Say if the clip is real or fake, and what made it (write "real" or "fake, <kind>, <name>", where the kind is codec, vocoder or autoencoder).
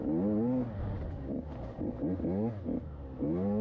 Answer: real